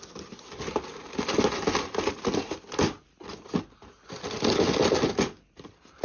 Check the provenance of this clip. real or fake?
real